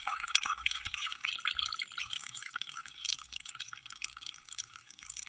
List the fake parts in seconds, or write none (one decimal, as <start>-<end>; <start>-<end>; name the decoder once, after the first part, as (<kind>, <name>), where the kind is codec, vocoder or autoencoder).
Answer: 0.0-1.3 (codec, SNAC); 2.0-5.3